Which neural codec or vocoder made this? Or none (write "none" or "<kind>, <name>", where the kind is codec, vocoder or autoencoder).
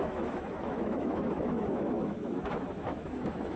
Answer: autoencoder, DAC-VAE